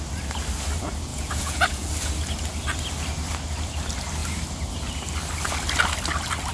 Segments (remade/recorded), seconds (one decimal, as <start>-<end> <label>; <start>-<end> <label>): 0.0-1.1 recorded; 1.1-1.9 remade; 1.9-6.5 recorded